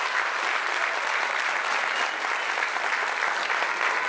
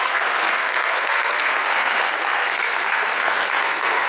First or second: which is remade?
second